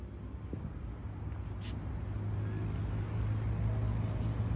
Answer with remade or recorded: recorded